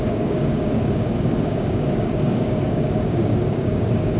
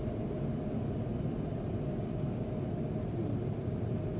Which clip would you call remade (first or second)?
first